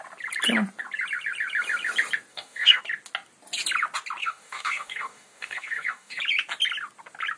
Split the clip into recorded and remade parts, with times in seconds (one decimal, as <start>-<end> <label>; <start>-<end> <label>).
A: 0.0-2.3 recorded; 2.3-2.8 remade; 2.8-4.2 recorded; 4.2-6.2 remade; 6.2-7.4 recorded